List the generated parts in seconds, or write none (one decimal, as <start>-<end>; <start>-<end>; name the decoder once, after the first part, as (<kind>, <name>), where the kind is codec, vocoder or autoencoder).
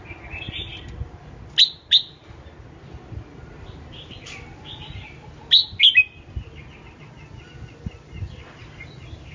none